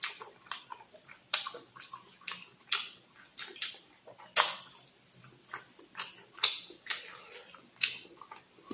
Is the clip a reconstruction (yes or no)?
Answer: yes